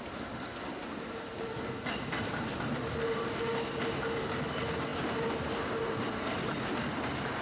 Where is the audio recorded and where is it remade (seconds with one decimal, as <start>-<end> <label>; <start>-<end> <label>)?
0.0-7.4 recorded